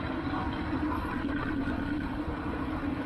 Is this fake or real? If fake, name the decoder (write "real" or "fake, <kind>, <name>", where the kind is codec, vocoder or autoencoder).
real